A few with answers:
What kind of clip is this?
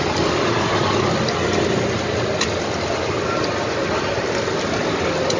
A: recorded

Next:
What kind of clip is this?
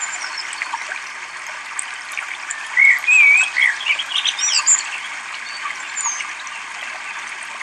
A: recorded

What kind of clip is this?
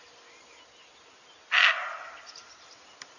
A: recorded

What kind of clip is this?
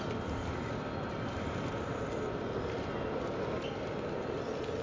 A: recorded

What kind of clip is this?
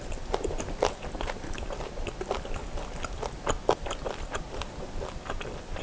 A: recorded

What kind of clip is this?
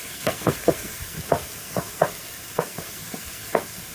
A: remade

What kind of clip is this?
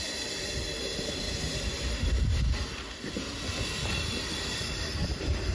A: recorded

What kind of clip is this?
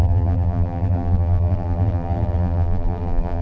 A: remade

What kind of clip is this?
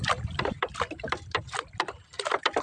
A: recorded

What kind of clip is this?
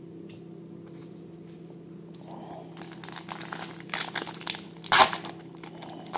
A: recorded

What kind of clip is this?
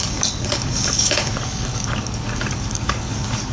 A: remade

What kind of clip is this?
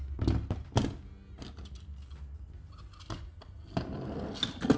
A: recorded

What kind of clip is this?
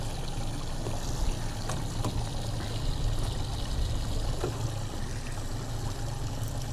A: recorded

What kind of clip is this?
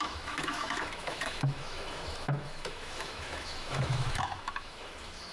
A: remade